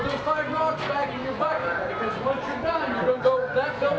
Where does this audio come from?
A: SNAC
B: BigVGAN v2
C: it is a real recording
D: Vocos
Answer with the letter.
C